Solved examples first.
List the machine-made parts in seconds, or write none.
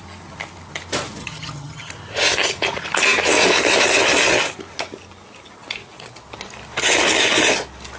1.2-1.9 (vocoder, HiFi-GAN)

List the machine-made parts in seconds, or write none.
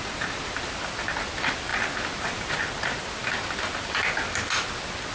none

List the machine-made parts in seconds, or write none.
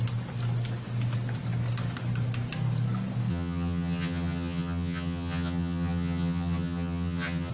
3.3-7.5 (vocoder, HiFi-GAN)